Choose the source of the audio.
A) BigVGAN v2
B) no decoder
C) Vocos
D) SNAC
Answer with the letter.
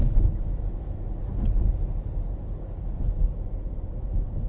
B